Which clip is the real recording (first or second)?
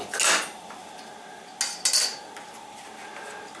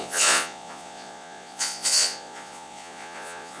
first